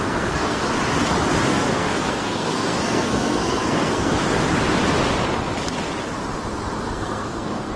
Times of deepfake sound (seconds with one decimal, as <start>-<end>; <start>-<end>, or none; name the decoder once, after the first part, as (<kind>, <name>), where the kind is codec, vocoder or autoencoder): 0.0-0.6 (codec, SNAC); 1.5-4.2; 6.9-7.8